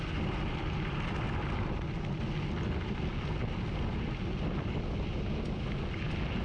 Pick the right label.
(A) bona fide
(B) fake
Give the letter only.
A